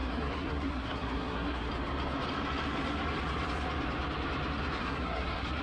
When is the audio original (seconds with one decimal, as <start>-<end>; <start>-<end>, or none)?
1.7-4.8